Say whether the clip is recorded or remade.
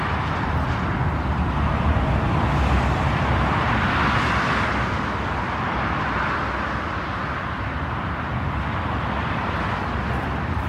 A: recorded